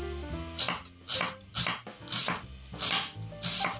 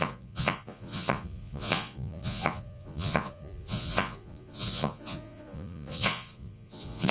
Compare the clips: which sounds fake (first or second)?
second